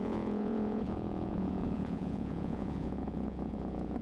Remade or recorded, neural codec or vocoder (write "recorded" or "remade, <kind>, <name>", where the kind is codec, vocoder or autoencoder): remade, vocoder, Vocos